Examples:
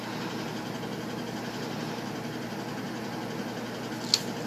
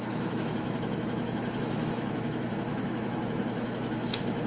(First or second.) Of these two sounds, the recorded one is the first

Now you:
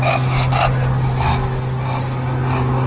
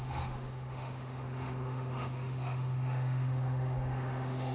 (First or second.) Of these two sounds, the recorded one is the first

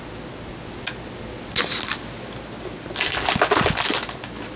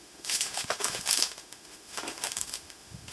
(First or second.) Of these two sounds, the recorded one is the first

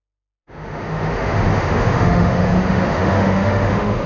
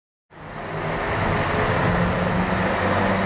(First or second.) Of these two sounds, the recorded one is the second